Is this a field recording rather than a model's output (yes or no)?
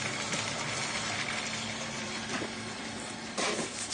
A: no